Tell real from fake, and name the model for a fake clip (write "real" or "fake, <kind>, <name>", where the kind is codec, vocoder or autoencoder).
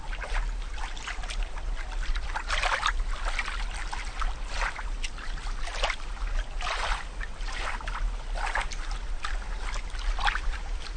real